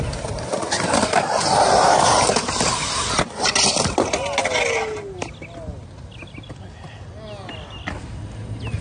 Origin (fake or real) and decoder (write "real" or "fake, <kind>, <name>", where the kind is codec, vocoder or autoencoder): real